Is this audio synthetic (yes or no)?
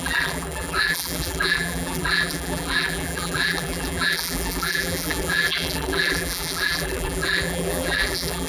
yes